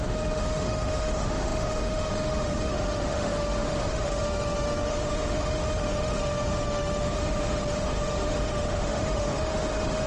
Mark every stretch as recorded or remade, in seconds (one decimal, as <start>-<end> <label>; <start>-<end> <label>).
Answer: 0.0-10.1 remade